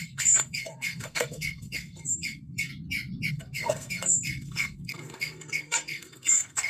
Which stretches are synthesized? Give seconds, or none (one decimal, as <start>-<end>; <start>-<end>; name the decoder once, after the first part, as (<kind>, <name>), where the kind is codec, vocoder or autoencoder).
0.0-2.7 (codec, SNAC); 3.3-6.7